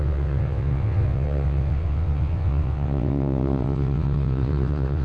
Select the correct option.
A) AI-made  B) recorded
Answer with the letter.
A